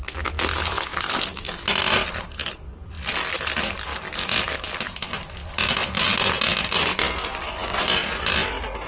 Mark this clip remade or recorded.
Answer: recorded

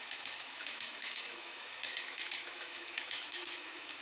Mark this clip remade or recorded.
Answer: remade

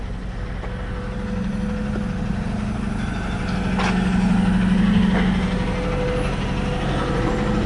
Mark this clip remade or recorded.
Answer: recorded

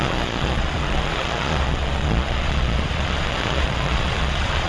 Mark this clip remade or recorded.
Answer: remade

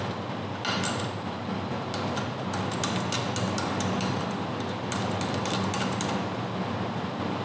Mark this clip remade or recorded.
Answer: recorded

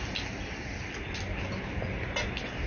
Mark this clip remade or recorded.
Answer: recorded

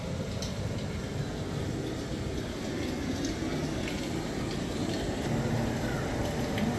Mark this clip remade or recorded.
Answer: recorded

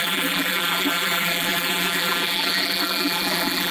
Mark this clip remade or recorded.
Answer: remade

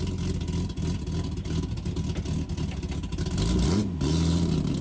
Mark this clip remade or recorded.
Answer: recorded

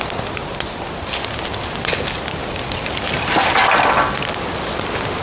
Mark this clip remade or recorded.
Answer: remade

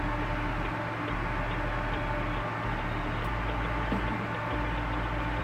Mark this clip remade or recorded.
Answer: recorded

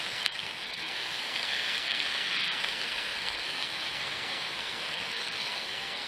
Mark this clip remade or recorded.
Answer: remade